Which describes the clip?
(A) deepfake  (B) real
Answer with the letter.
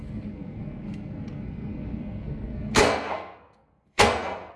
A